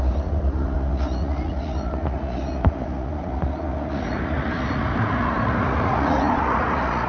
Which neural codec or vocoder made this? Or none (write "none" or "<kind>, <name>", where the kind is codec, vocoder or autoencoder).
vocoder, Vocos